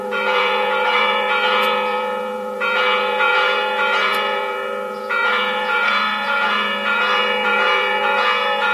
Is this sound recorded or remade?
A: remade